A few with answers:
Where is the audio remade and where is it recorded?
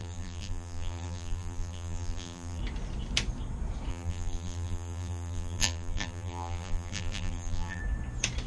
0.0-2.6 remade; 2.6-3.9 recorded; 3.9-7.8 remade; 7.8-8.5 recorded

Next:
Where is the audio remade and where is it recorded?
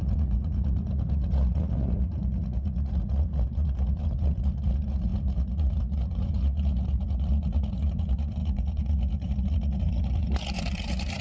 0.0-11.2 remade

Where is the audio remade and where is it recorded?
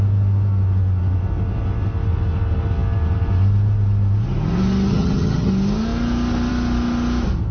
0.0-4.9 recorded; 4.9-5.5 remade; 5.5-7.5 recorded